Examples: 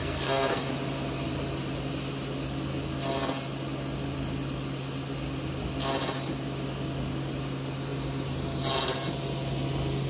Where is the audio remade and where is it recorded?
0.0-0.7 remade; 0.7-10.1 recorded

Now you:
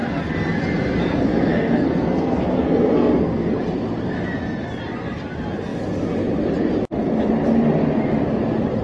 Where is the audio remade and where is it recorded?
0.0-1.1 recorded; 1.1-3.6 remade; 3.6-8.8 recorded

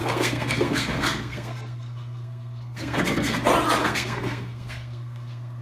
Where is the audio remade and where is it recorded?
0.0-3.4 remade; 3.4-3.8 recorded; 3.8-5.6 remade

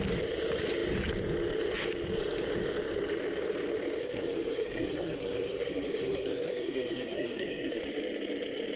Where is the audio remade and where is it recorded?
0.0-4.0 recorded; 4.0-7.8 remade; 7.8-8.8 recorded

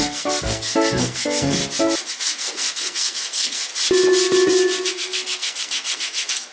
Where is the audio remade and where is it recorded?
0.0-1.6 remade; 1.6-2.1 recorded; 2.1-3.7 remade; 3.7-4.9 recorded; 4.9-6.5 remade

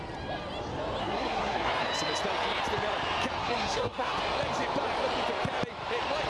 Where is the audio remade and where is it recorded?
0.0-1.0 recorded; 1.0-1.7 remade; 1.7-3.4 recorded; 3.4-4.2 remade; 4.2-6.3 recorded